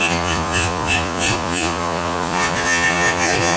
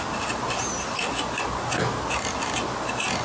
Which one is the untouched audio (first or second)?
second